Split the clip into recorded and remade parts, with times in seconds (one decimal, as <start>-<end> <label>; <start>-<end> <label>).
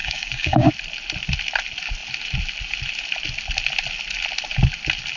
0.0-0.7 remade; 0.7-5.2 recorded